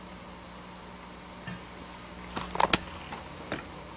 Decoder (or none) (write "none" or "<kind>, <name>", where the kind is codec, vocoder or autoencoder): none